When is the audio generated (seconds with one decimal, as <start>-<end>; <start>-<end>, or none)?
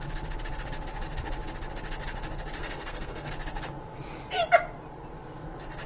2.6-3.3